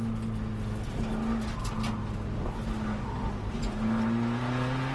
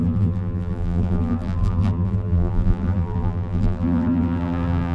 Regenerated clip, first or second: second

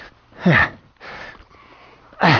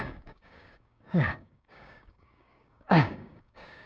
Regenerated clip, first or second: second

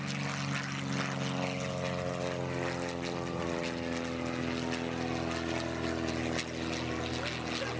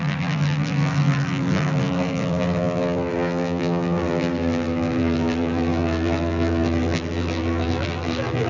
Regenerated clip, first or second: second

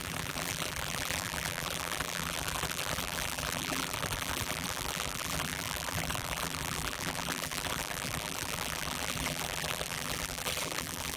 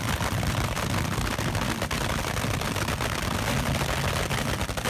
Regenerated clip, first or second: first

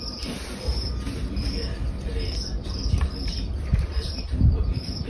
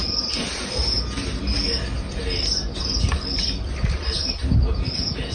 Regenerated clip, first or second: first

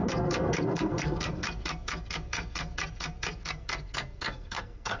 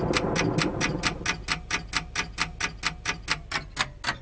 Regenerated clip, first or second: first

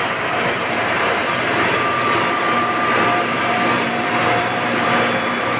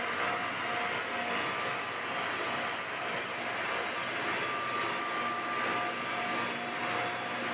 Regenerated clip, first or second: first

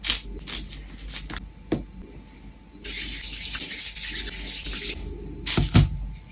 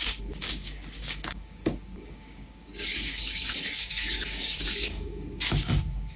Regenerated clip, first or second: second